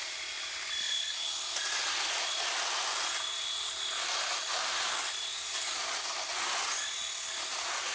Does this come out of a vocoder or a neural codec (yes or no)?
no